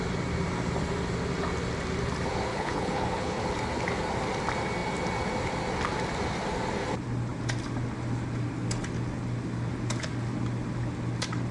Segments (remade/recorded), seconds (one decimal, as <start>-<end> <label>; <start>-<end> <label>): 0.0-2.5 recorded; 2.5-3.4 remade; 3.4-11.5 recorded